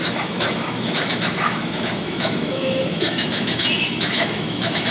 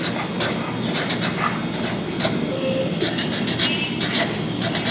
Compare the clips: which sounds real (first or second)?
second